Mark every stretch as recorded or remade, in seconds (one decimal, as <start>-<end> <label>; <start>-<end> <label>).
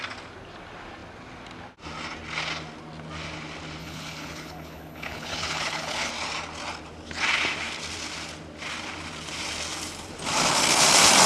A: 0.0-3.8 recorded; 3.8-6.1 remade; 6.1-11.3 recorded